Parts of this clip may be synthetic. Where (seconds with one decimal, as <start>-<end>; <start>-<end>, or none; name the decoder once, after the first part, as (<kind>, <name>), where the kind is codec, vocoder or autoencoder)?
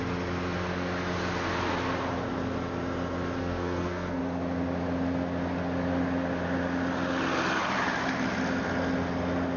3.4-4.2 (codec, SNAC)